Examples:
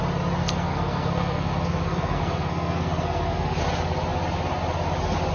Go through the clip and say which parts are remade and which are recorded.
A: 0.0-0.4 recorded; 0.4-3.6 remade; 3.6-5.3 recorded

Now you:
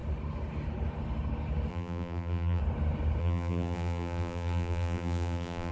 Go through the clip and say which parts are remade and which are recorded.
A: 0.0-1.7 recorded; 1.7-2.6 remade; 2.6-3.2 recorded; 3.2-5.7 remade

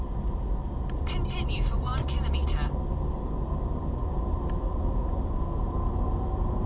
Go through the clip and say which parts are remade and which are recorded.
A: 0.0-6.7 recorded

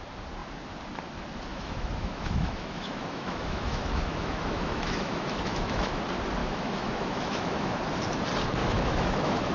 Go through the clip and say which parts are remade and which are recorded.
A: 0.0-1.5 recorded; 1.5-6.0 remade; 6.0-6.4 recorded; 6.4-7.8 remade; 7.8-8.6 recorded; 8.6-9.5 remade